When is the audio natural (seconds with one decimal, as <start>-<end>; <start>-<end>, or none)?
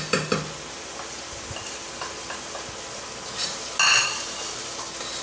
0.0-5.2